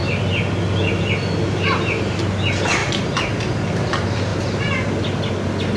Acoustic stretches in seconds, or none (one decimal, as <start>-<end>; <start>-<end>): 0.0-2.8; 3.3-4.3; 4.9-5.8